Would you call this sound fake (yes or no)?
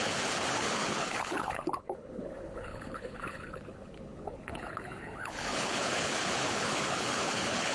yes